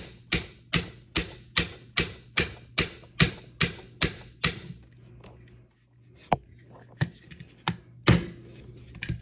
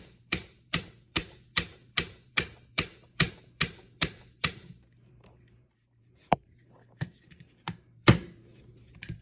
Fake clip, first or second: second